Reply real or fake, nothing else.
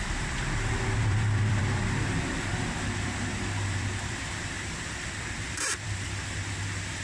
fake